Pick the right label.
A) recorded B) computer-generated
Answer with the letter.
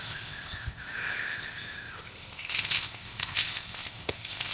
B